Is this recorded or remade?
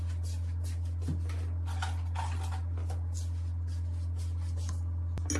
recorded